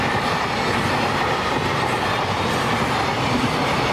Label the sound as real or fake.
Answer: real